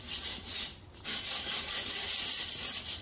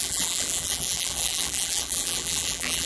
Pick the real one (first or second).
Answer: first